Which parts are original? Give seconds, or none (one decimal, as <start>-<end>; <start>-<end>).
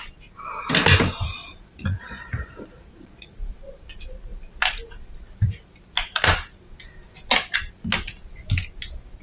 0.0-1.4; 3.3-9.2